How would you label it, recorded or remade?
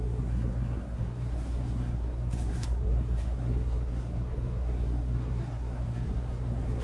remade